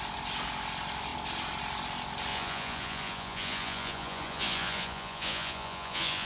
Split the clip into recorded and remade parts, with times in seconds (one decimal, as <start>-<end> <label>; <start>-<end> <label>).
0.0-2.3 recorded; 2.3-6.3 remade